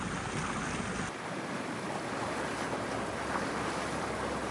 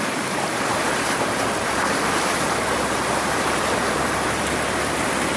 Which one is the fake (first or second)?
second